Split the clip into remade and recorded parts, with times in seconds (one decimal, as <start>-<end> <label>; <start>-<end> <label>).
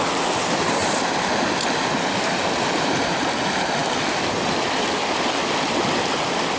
0.0-6.6 recorded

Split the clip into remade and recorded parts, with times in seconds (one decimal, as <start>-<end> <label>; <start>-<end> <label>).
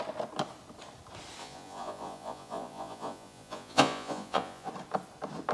0.0-1.4 recorded; 1.4-4.7 remade; 4.7-5.5 recorded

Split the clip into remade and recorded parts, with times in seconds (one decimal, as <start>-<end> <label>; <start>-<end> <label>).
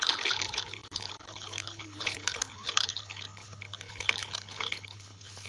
0.0-5.5 remade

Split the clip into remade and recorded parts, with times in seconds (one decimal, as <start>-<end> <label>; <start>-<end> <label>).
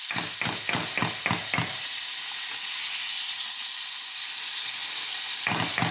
0.0-5.9 recorded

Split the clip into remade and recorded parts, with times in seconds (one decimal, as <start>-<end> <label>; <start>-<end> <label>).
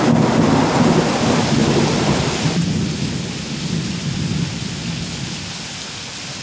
0.0-6.4 recorded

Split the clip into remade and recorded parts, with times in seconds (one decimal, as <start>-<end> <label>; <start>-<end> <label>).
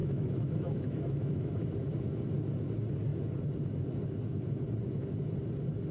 0.0-1.5 remade; 1.5-5.9 recorded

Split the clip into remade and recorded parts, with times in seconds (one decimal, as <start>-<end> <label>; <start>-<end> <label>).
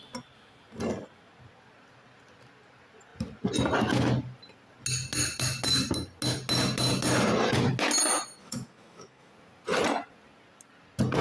0.0-8.4 recorded; 8.4-9.3 remade; 9.3-11.2 recorded